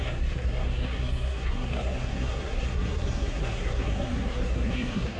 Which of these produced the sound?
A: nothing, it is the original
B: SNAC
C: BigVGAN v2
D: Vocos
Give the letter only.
B